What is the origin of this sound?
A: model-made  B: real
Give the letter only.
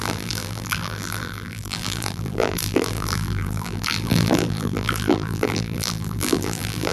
A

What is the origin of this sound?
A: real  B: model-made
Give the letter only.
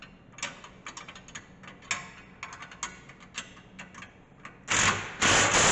A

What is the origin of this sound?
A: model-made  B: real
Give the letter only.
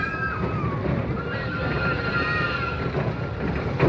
B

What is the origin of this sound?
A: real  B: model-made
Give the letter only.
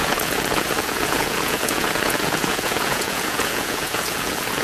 B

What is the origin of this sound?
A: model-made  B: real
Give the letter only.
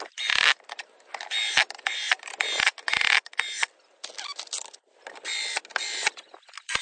B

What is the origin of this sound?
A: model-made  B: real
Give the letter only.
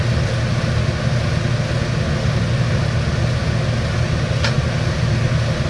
B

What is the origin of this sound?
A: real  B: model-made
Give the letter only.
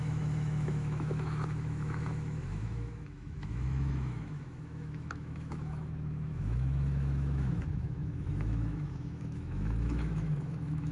B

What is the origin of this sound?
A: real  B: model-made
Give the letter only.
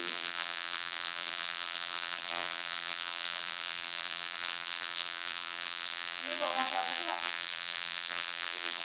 B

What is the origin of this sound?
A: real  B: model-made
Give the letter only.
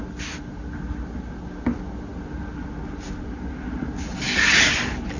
A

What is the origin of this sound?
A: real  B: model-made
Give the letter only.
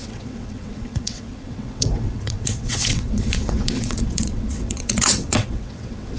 B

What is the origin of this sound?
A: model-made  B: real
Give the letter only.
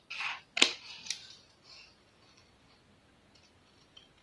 B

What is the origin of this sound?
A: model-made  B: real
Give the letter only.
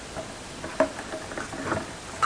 B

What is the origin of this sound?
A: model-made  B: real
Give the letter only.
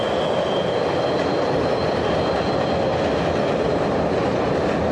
B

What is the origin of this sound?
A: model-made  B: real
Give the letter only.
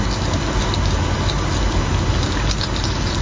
B